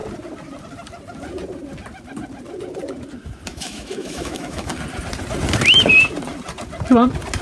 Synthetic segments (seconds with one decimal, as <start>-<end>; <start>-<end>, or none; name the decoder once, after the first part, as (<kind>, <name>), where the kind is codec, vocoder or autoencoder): 3.5-4.7 (autoencoder, DAC-VAE)